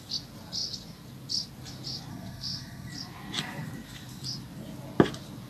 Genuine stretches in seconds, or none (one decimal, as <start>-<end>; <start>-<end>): 0.0-2.1; 2.9-5.5